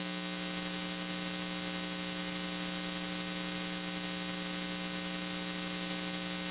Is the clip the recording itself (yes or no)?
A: yes